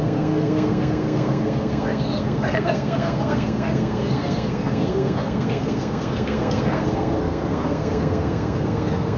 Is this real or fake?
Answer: fake